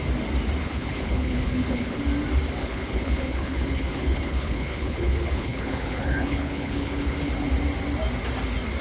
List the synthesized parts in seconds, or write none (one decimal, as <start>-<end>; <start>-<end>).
0.6-2.0; 2.6-7.3